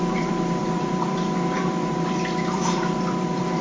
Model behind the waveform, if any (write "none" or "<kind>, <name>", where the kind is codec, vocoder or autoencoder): vocoder, BigVGAN v2